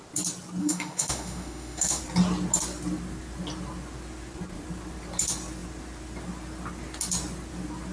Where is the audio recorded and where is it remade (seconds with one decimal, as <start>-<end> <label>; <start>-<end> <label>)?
0.0-0.6 recorded; 0.6-2.0 remade; 2.0-7.9 recorded